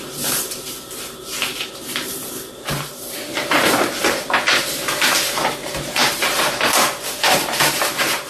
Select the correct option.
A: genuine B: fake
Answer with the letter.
B